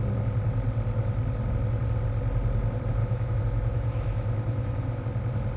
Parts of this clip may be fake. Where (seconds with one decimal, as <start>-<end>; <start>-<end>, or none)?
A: 3.0-5.0